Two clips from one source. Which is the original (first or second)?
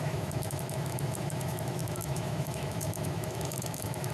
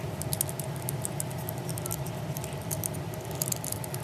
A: second